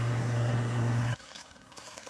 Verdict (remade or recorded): remade